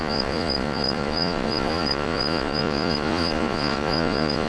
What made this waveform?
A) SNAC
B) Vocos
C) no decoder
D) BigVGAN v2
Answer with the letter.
B